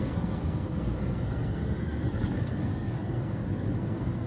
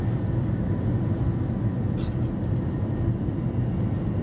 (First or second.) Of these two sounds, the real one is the second